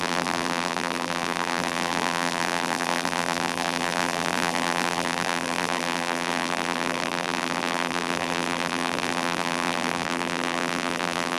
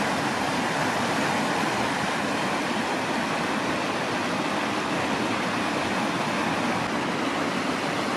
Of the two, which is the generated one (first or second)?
first